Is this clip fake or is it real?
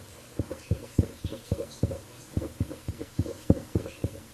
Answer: fake